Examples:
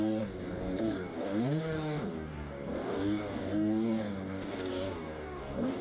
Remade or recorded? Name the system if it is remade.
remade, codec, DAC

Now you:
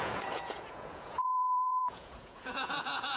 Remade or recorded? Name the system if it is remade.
remade, vocoder, Vocos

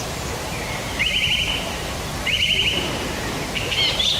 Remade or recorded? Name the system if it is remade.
remade, vocoder, BigVGAN v2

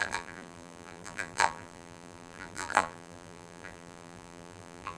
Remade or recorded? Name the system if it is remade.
remade, vocoder, BigVGAN v2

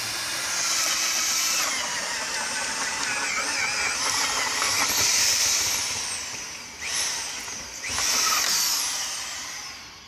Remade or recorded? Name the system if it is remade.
remade, vocoder, BigVGAN v2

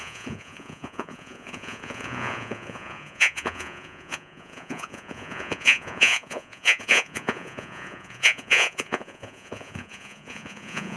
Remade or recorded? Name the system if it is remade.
remade, vocoder, Vocos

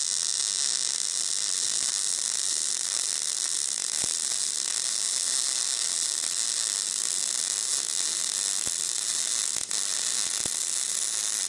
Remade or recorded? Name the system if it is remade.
recorded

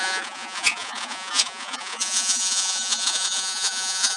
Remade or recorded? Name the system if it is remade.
remade, vocoder, Vocos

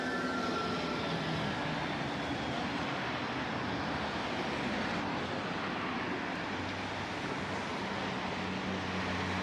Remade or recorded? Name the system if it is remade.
recorded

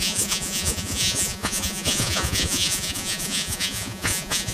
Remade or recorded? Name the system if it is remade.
remade, vocoder, Vocos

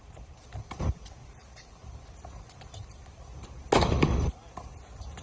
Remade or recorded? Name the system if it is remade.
remade, vocoder, BigVGAN v2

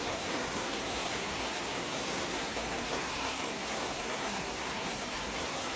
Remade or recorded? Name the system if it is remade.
remade, codec, SNAC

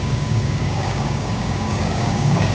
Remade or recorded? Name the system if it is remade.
remade, codec, DAC